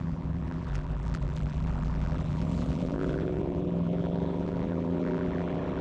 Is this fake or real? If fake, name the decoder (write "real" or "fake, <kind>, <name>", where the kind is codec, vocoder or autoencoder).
fake, vocoder, BigVGAN v2